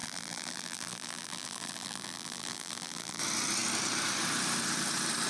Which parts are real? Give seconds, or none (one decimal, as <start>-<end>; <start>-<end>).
3.2-5.3